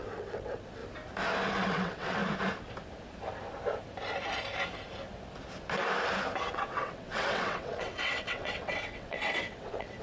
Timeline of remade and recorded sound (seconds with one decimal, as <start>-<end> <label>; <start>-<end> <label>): 0.0-0.8 remade; 0.8-1.5 recorded; 1.5-2.2 remade; 2.2-6.5 recorded; 6.5-10.0 remade